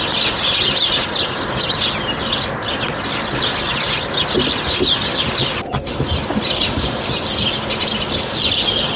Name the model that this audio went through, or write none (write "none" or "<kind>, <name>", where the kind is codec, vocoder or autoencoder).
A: none